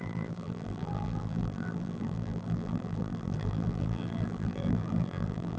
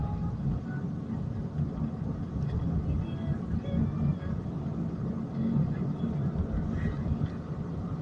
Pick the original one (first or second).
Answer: second